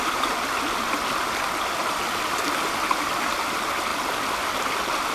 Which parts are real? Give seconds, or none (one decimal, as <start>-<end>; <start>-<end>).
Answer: 3.9-5.1